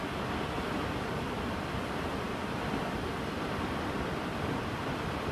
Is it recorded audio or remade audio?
recorded